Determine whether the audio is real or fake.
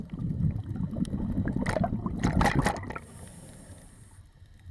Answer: real